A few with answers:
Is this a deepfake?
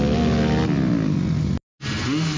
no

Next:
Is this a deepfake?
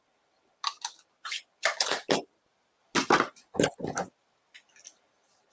no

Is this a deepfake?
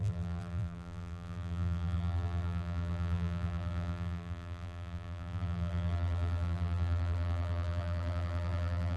yes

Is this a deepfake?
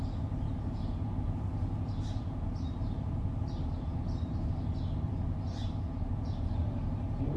no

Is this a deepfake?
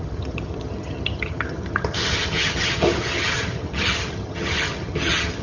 yes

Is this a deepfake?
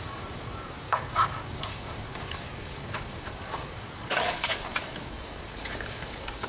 yes